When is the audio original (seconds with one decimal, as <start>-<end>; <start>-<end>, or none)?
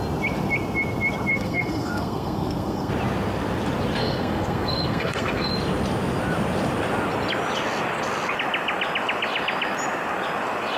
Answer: 0.0-1.3; 2.9-4.0; 5.5-10.8